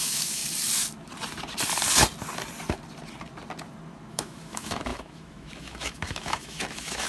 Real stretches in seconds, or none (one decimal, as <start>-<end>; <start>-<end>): 0.4-4.1